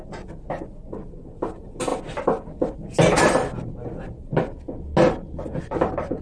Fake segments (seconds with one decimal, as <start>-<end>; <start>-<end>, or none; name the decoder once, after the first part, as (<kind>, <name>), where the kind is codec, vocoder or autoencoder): none